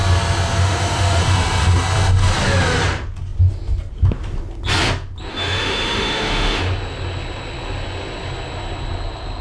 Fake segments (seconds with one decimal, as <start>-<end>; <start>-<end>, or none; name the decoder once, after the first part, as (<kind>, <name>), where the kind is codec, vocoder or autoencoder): 0.6-1.2 (autoencoder, DAC-VAE); 5.3-6.6